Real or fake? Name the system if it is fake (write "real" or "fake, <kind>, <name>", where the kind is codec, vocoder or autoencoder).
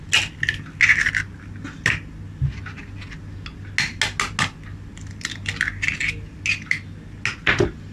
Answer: real